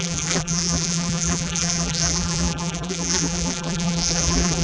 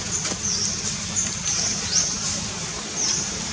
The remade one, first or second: first